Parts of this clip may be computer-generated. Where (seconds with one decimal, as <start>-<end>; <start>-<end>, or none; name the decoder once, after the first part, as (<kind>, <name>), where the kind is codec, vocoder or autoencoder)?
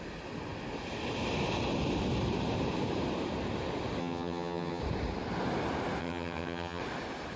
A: 4.0-4.8 (vocoder, HiFi-GAN); 6.0-6.8